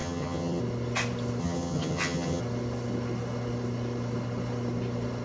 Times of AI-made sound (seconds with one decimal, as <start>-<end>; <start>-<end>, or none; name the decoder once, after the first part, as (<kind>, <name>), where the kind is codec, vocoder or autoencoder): 0.0-0.6 (vocoder, HiFi-GAN); 1.4-2.4